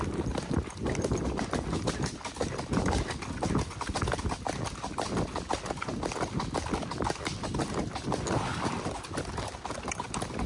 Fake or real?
real